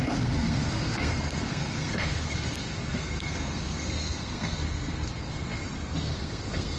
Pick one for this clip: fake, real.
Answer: fake